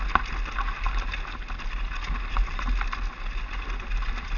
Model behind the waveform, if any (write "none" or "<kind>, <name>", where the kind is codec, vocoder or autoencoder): none